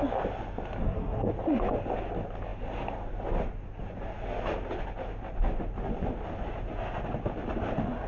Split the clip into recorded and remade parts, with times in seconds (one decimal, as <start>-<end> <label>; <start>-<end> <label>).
0.0-0.8 recorded; 0.8-1.3 remade; 1.3-8.1 recorded